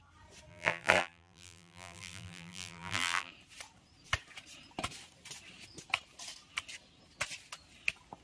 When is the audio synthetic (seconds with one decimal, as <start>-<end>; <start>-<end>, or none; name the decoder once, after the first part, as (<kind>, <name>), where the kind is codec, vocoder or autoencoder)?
0.5-3.3 (vocoder, BigVGAN v2)